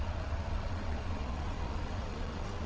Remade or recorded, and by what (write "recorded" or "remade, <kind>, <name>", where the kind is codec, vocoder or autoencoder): remade, vocoder, Vocos